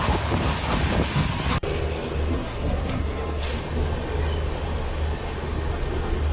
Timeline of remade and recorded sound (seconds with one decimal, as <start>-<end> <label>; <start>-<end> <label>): 0.0-2.3 recorded; 2.3-3.5 remade; 3.5-6.3 recorded